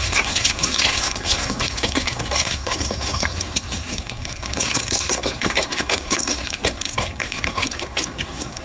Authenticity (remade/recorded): remade